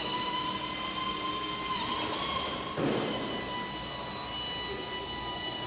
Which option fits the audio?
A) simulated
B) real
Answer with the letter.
B